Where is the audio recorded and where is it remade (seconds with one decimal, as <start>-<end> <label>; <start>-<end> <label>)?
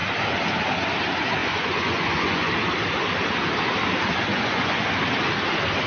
0.0-1.4 recorded; 1.4-2.5 remade; 2.5-4.3 recorded; 4.3-4.9 remade; 4.9-5.9 recorded